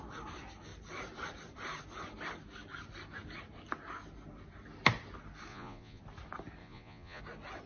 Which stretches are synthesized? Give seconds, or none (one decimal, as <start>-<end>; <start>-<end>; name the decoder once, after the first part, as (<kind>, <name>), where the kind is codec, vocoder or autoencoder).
5.5-6.0 (vocoder, Vocos); 6.6-7.2